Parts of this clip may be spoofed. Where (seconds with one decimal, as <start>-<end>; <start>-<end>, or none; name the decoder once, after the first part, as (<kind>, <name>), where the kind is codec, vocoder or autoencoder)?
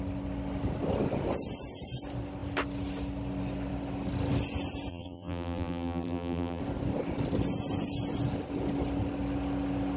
4.9-6.6 (vocoder, BigVGAN v2)